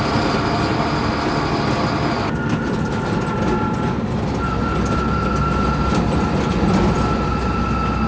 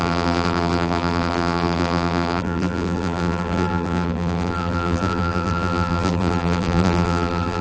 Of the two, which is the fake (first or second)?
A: second